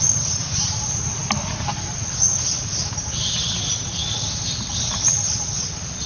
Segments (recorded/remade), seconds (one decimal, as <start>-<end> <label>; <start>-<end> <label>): 0.0-6.1 recorded